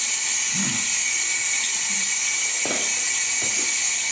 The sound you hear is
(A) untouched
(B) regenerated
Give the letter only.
A